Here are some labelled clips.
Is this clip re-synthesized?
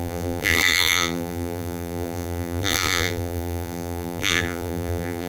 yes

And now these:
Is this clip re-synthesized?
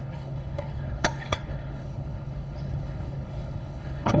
yes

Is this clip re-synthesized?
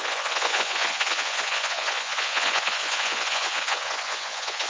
yes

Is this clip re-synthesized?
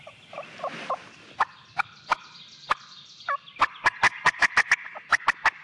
no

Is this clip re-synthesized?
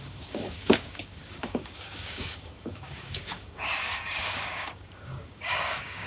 yes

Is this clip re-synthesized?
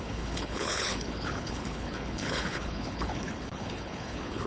yes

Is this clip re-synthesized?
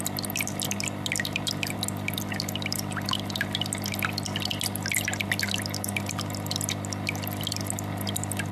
no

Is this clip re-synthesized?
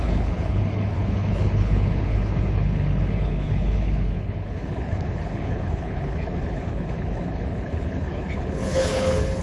yes